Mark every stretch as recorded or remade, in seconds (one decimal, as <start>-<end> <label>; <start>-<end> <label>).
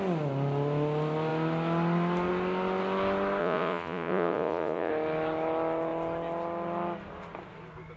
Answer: 0.0-3.4 recorded; 3.4-4.9 remade; 4.9-8.0 recorded